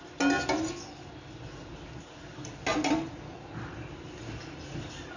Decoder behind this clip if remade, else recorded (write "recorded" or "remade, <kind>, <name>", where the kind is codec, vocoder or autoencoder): recorded